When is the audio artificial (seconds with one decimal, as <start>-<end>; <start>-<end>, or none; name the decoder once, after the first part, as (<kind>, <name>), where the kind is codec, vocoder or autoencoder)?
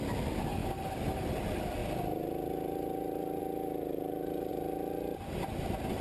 none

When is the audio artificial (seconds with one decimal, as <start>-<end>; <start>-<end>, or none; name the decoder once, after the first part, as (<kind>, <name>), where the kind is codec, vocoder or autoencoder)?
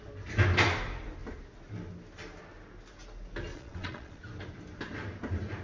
3.5-4.2 (vocoder, Vocos)